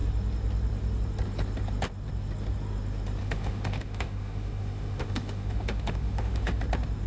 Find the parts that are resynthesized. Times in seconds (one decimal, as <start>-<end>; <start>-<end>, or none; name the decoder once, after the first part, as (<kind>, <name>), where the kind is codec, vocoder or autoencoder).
3.2-6.6 (autoencoder, DAC-VAE)